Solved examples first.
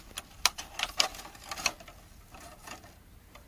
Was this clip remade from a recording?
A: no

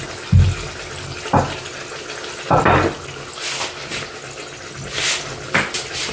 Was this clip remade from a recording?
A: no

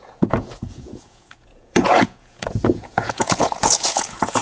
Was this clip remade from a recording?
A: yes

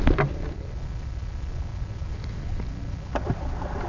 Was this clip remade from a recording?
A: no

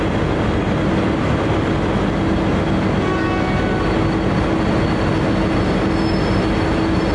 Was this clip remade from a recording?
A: no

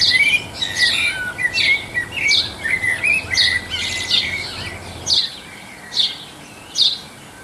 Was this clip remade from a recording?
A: no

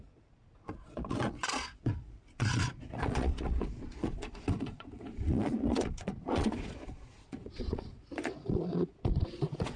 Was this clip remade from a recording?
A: yes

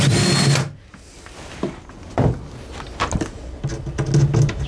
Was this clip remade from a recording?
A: no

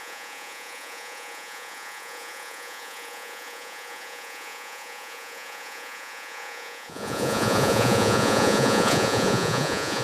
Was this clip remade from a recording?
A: yes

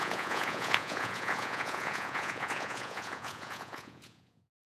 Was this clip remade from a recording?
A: yes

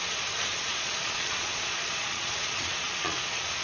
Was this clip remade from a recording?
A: yes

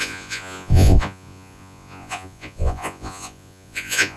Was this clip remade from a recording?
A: yes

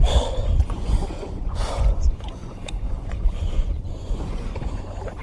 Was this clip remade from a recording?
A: yes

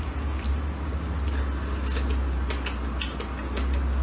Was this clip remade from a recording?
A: no